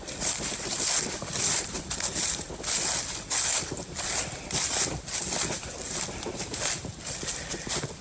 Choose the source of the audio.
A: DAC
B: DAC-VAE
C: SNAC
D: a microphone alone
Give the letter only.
D